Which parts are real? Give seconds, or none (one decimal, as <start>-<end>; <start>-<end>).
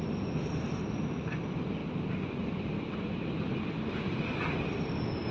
0.0-5.3